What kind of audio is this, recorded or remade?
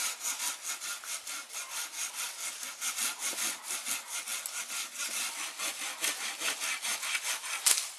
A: recorded